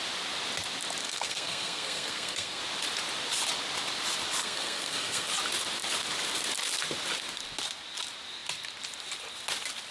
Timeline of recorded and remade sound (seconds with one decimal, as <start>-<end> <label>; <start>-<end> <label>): 0.0-1.0 recorded; 1.0-2.6 remade; 2.6-4.4 recorded; 4.4-5.3 remade; 5.3-9.9 recorded